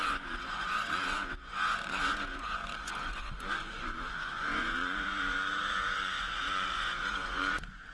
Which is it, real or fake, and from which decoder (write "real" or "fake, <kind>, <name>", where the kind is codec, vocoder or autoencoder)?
fake, vocoder, Vocos